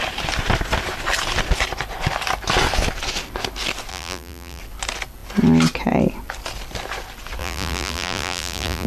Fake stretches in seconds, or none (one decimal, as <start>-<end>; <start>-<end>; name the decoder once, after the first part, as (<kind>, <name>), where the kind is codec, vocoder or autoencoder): 3.9-4.6 (vocoder, BigVGAN v2); 7.4-8.9